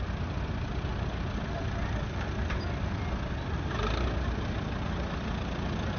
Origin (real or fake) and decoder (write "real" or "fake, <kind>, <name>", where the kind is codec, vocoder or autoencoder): real